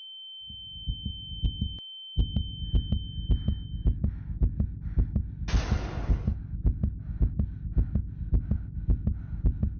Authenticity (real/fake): real